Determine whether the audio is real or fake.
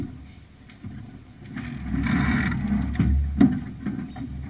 real